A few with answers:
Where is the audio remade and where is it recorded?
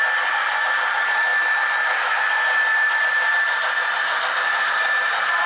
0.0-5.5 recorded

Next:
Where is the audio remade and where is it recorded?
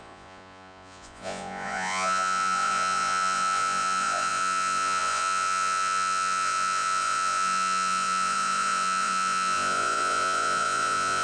0.0-11.2 remade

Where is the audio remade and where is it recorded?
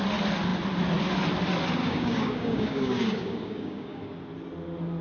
0.0-1.8 recorded; 1.8-4.2 remade; 4.2-5.0 recorded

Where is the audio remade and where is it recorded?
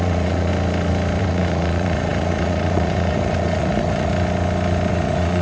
0.0-0.5 remade; 0.5-1.2 recorded; 1.2-4.1 remade; 4.1-4.9 recorded; 4.9-5.4 remade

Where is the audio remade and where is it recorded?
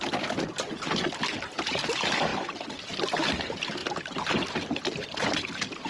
0.0-2.3 recorded; 2.3-2.9 remade; 2.9-3.8 recorded; 3.8-5.9 remade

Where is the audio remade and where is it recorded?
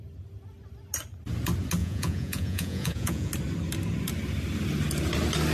0.0-1.8 recorded; 1.8-3.3 remade; 3.3-5.5 recorded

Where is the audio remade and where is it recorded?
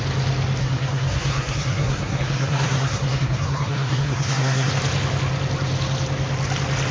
0.0-0.6 recorded; 0.6-4.7 remade; 4.7-6.9 recorded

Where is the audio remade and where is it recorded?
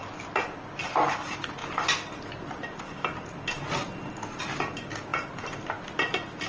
0.0-6.5 recorded